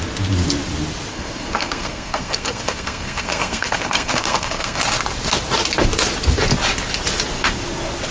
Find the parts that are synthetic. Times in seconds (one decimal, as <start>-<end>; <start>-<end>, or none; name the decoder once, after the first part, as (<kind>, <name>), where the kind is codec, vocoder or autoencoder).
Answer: 1.1-4.8 (codec, SNAC)